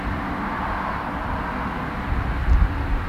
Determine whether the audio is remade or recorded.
recorded